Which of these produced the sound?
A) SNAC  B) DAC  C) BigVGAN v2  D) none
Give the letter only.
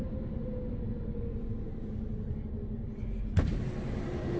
D